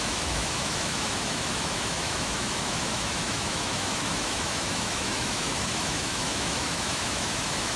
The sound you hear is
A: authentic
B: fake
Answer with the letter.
B